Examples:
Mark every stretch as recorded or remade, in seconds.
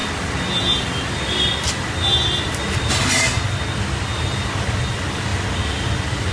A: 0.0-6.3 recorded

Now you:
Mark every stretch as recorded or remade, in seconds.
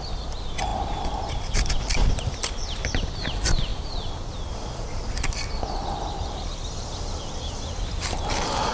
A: 0.0-8.7 remade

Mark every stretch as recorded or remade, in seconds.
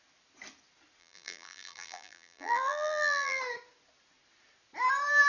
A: 0.0-1.0 recorded; 1.0-3.4 remade; 3.4-5.3 recorded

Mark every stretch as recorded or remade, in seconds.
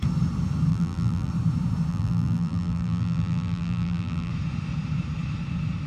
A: 0.0-0.7 recorded; 0.7-1.3 remade; 1.3-1.9 recorded; 1.9-4.3 remade; 4.3-5.9 recorded